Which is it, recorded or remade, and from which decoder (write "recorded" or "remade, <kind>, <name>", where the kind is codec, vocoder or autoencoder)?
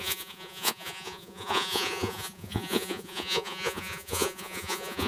remade, vocoder, Vocos